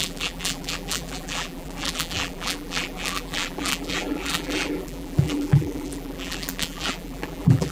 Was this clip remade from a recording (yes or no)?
yes